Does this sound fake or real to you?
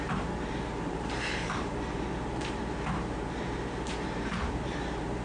fake